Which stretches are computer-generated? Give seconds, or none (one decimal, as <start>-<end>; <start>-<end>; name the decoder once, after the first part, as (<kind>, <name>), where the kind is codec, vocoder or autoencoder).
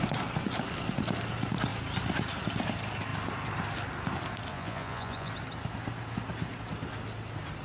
4.5-5.3 (vocoder, Vocos)